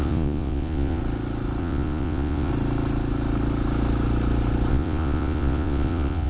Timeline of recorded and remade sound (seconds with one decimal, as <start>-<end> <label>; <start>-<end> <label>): 0.0-1.0 remade; 1.0-1.6 recorded; 1.6-2.5 remade; 2.5-4.7 recorded; 4.7-6.3 remade